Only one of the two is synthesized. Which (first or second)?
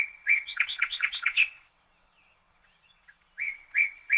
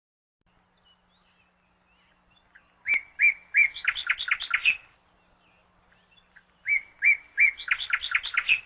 first